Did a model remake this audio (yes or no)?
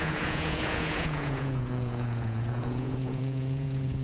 yes